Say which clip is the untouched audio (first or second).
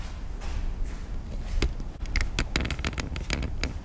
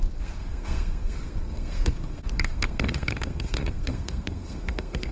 first